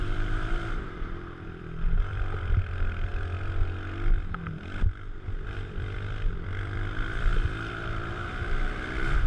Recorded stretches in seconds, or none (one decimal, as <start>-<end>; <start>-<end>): 3.1-4.8

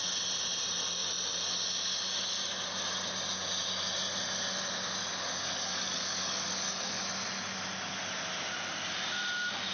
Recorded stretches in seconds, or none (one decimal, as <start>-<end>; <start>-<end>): 0.0-5.0; 7.0-9.7

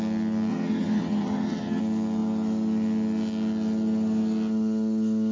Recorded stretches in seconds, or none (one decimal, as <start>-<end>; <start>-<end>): 0.0-0.5; 1.8-5.3

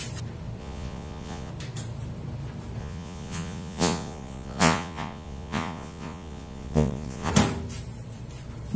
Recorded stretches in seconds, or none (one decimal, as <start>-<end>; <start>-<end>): 0.0-0.6; 1.5-2.8; 7.3-8.8